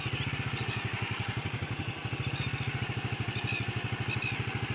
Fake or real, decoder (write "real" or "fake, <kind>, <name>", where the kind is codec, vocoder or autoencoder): real